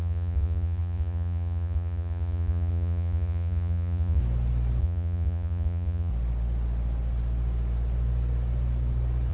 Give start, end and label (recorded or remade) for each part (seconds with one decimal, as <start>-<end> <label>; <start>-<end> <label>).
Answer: 0.0-4.2 remade; 4.2-4.8 recorded; 4.8-6.1 remade; 6.1-9.3 recorded